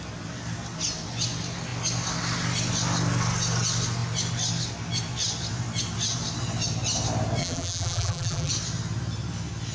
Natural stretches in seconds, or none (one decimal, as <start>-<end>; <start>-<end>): 0.0-7.4; 8.5-9.7